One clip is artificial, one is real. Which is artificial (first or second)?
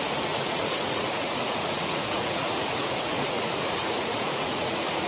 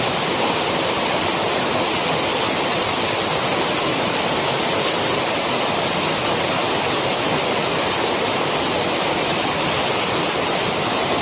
first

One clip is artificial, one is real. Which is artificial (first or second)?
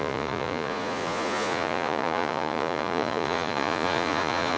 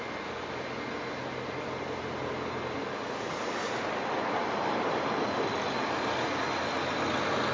first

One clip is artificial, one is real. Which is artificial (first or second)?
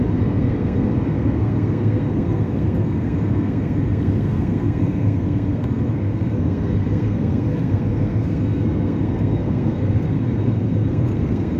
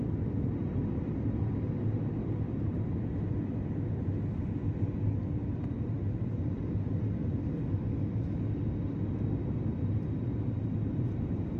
first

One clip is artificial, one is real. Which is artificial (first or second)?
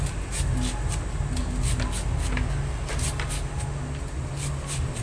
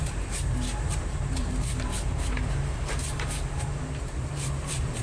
second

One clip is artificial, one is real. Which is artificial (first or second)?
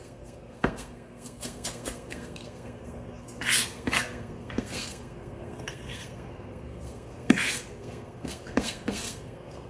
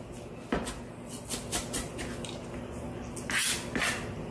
first